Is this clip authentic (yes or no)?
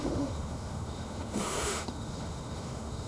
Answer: no